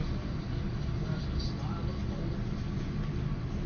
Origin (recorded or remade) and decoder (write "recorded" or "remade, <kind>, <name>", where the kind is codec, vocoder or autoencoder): recorded